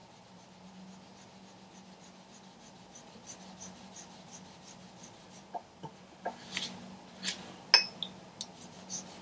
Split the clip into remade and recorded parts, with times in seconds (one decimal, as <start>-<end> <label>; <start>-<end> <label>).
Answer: 0.0-9.2 recorded